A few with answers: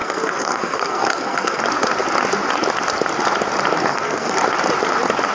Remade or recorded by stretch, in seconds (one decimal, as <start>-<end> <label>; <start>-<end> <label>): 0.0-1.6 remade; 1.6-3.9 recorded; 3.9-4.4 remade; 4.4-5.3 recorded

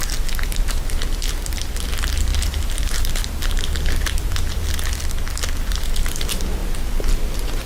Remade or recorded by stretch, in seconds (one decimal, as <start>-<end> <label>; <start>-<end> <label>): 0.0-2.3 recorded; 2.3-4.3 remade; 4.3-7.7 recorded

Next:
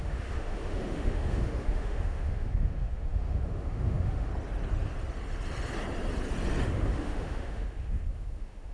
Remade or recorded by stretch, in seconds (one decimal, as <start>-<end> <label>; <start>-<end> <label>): 0.0-4.3 remade; 4.3-6.7 recorded; 6.7-8.7 remade

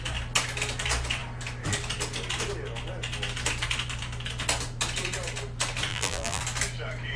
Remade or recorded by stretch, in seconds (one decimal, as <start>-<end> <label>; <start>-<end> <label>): 0.0-5.9 recorded; 5.9-6.4 remade; 6.4-7.2 recorded

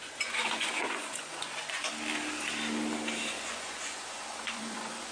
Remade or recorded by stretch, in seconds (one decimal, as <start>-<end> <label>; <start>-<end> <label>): 0.0-1.9 remade; 1.9-3.3 recorded; 3.3-5.1 remade